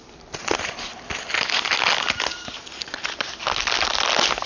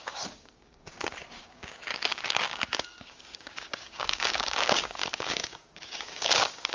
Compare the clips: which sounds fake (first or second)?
second